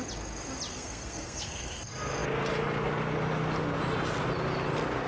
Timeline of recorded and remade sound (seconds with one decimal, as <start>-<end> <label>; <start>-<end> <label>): 0.0-0.7 recorded; 0.7-1.8 remade; 1.8-5.1 recorded